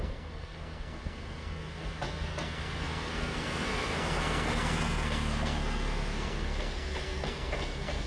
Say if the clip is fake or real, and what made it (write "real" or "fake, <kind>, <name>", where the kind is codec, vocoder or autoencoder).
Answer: fake, codec, SNAC